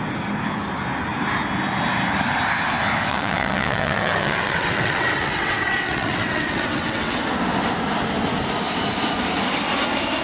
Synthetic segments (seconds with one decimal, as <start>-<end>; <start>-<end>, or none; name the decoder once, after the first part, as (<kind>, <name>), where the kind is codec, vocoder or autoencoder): 3.1-7.2 (vocoder, WaveNeXt)